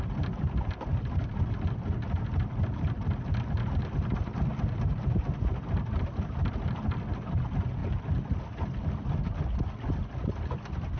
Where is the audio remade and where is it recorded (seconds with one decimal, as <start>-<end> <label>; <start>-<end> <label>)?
0.0-11.0 recorded